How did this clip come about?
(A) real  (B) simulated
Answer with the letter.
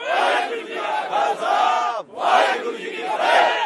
B